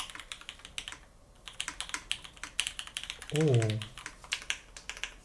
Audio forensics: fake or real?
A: real